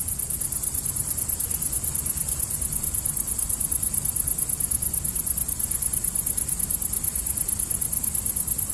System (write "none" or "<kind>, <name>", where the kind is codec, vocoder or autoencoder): none